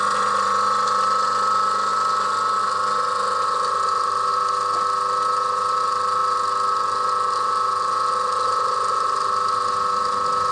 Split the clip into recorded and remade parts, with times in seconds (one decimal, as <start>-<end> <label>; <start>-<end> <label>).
0.0-10.5 recorded

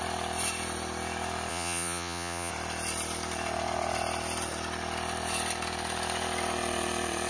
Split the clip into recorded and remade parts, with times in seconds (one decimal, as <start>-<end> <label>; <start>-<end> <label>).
0.0-1.5 recorded; 1.5-2.5 remade; 2.5-7.3 recorded

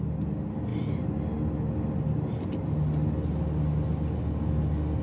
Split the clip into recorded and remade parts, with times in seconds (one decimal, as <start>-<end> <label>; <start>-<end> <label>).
0.0-0.7 recorded; 0.7-1.2 remade; 1.2-5.0 recorded

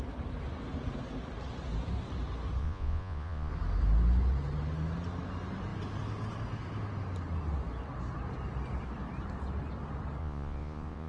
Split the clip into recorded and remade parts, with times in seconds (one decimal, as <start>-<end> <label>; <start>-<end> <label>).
0.0-2.6 recorded; 2.6-3.5 remade; 3.5-10.2 recorded; 10.2-11.1 remade

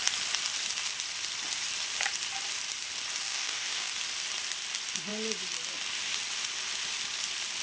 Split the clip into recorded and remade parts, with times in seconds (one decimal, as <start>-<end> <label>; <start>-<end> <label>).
0.0-3.2 recorded; 3.2-3.9 remade; 3.9-7.6 recorded

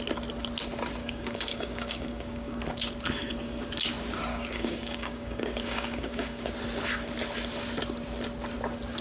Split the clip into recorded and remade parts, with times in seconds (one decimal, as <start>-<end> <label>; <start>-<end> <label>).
0.0-1.0 recorded; 1.0-2.6 remade; 2.6-4.3 recorded; 4.3-6.5 remade; 6.5-9.0 recorded

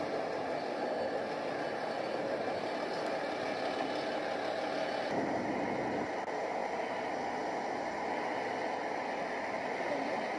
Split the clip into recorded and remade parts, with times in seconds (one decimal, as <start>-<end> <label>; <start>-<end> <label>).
0.0-6.6 recorded; 6.6-9.9 remade; 9.9-10.4 recorded